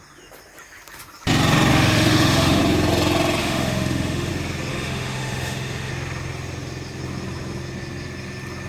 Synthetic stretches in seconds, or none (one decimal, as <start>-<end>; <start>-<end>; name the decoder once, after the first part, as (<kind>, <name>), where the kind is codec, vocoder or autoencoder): 1.7-2.6 (autoencoder, DAC-VAE); 3.4-4.3; 4.7-5.9

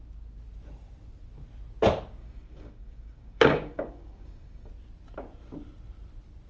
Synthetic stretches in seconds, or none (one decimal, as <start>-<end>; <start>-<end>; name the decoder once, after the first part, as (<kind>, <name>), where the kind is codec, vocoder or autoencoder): 2.2-4.7 (codec, DAC)

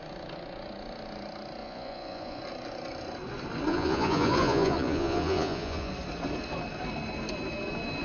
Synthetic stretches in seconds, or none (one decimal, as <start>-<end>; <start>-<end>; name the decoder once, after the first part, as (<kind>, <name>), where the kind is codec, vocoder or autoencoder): 1.6-2.4 (vocoder, Vocos); 3.7-5.9

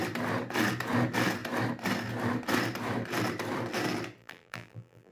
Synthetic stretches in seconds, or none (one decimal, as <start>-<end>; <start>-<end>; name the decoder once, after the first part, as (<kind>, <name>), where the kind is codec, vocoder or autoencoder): 4.2-5.1 (vocoder, BigVGAN v2)